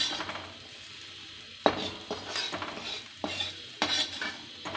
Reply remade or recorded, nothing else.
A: recorded